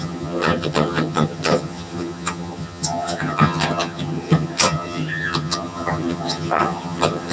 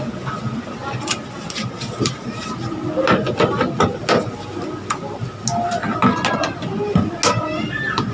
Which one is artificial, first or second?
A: first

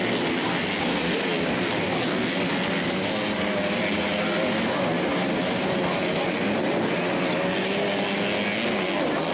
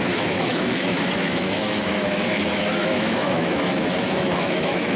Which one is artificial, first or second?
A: second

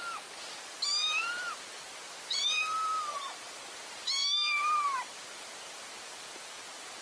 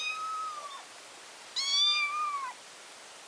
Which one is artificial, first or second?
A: first